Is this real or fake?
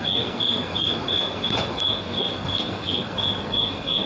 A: fake